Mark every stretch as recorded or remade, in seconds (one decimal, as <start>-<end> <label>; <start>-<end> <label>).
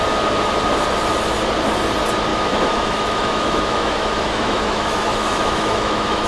0.0-2.3 recorded; 2.3-6.3 remade